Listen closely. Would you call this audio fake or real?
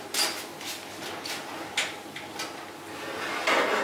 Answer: real